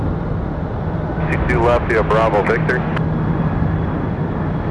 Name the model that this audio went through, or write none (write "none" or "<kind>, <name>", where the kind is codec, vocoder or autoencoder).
none